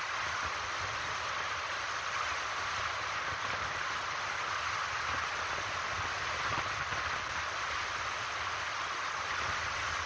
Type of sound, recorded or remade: recorded